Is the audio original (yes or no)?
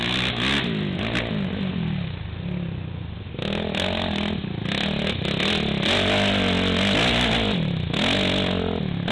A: yes